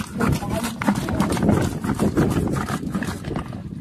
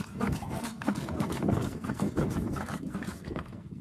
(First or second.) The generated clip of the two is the second